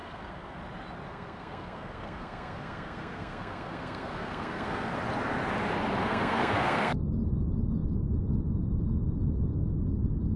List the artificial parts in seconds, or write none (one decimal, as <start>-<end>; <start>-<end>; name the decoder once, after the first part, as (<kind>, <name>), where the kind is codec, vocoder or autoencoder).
0.0-0.6 (codec, SNAC); 1.1-4.9; 6.0-7.0

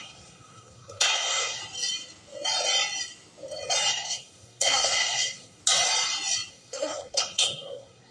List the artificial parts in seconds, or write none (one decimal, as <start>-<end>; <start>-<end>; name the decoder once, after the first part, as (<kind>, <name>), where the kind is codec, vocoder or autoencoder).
0.0-1.6 (codec, SNAC); 3.9-5.6; 6.5-8.1